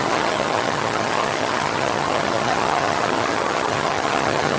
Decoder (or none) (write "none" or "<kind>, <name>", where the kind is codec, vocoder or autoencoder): vocoder, HiFi-GAN